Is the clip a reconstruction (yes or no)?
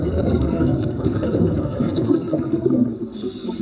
yes